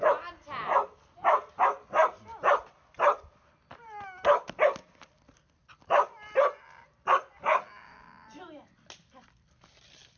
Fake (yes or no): no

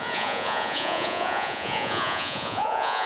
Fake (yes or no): yes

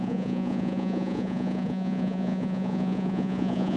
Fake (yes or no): yes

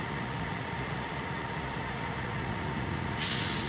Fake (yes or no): yes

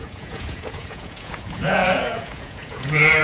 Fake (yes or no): yes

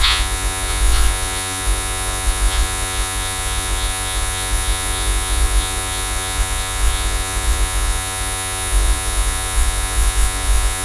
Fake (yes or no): yes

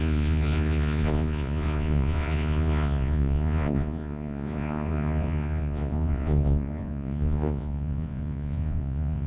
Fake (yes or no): yes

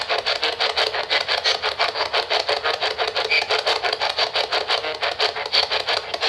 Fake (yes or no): no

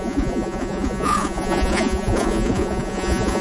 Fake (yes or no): yes